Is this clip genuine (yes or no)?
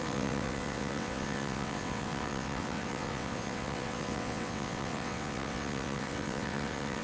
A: no